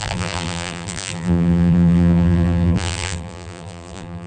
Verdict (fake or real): fake